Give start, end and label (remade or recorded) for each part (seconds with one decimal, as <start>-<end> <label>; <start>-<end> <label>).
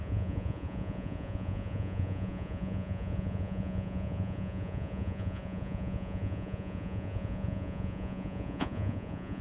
0.0-9.4 remade